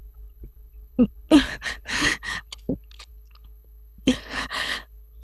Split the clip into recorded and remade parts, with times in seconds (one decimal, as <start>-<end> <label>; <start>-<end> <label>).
0.0-5.2 remade